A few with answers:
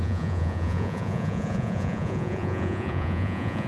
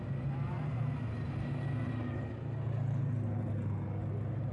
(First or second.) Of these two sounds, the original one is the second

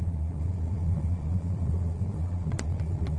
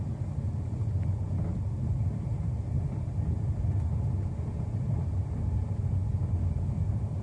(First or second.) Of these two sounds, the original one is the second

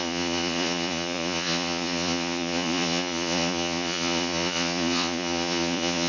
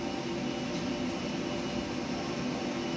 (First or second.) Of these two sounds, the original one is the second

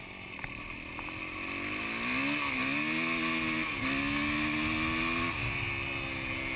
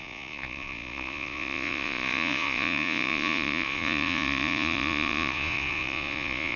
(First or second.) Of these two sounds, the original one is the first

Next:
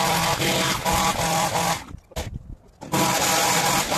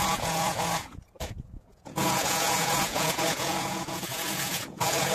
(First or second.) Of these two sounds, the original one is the first